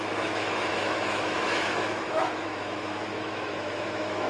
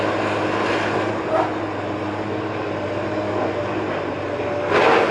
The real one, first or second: second